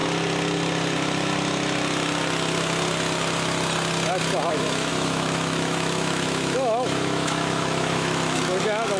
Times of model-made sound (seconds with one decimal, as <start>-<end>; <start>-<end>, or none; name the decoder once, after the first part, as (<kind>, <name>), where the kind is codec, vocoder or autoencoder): 4.5-9.0 (autoencoder, DAC-VAE)